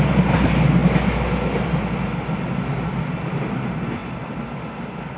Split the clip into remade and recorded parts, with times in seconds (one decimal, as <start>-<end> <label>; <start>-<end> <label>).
0.0-5.2 recorded